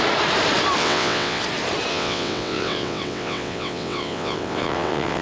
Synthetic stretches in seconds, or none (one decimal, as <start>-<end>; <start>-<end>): 0.8-1.4; 1.9-5.2